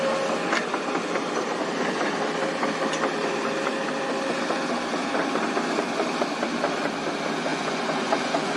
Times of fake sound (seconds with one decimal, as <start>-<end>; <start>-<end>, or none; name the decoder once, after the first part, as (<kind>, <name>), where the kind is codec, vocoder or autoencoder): 7.5-8.6 (vocoder, Vocos)